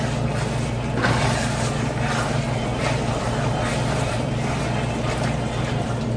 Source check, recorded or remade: recorded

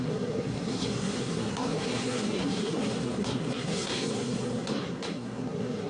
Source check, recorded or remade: remade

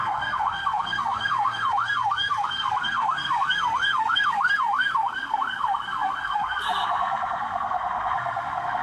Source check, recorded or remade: remade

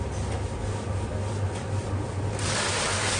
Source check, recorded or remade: recorded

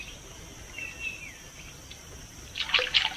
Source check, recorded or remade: recorded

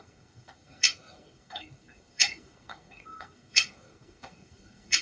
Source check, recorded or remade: remade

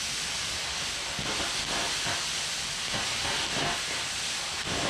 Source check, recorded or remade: recorded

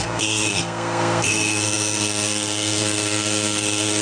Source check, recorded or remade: remade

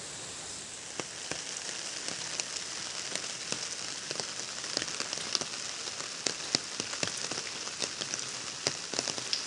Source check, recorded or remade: recorded